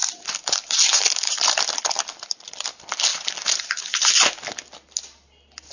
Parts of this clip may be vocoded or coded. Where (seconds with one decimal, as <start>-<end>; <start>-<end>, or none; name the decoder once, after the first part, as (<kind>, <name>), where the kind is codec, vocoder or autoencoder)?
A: 0.0-1.6 (vocoder, BigVGAN v2); 3.1-4.0